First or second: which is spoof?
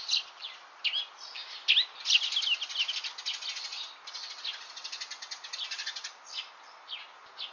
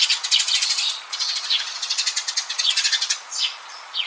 second